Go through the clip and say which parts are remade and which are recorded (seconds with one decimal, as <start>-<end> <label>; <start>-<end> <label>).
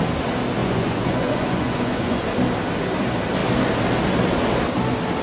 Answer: 0.0-0.6 recorded; 0.6-2.2 remade; 2.2-5.2 recorded